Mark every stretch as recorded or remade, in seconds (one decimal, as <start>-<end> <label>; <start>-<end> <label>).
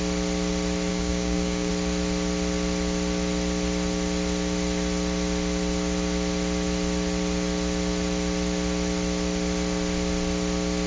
0.0-0.9 recorded; 0.9-1.7 remade; 1.7-10.9 recorded